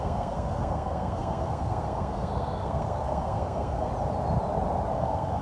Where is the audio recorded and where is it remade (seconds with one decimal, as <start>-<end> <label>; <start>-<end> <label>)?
0.0-3.9 remade; 3.9-4.9 recorded; 4.9-5.4 remade